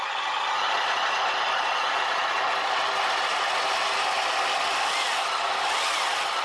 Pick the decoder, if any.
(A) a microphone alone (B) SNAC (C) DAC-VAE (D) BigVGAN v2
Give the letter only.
A